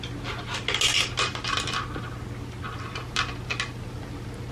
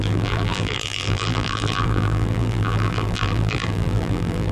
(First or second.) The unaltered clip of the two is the first